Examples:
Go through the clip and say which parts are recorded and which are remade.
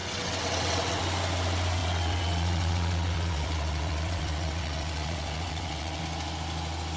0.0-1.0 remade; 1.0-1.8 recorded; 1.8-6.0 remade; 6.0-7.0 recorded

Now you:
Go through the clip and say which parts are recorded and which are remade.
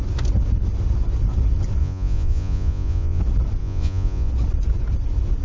0.0-1.8 recorded; 1.8-3.2 remade; 3.2-3.6 recorded; 3.6-4.3 remade; 4.3-5.4 recorded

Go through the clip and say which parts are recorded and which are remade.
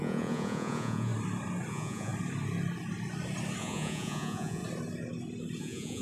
0.0-1.1 remade; 1.1-1.7 recorded; 1.7-2.1 remade; 2.1-3.6 recorded; 3.6-4.6 remade; 4.6-5.6 recorded; 5.6-6.0 remade